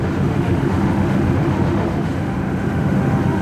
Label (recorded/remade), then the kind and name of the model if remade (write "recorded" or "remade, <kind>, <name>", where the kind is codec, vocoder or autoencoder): remade, autoencoder, DAC-VAE